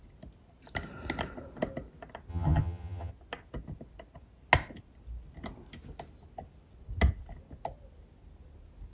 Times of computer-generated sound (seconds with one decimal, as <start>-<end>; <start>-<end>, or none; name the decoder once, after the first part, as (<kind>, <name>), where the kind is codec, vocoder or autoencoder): 2.3-3.1 (vocoder, HiFi-GAN)